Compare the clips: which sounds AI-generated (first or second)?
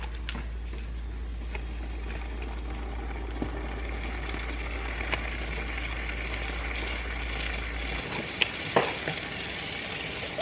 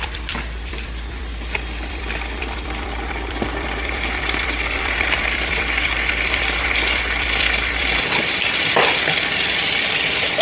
second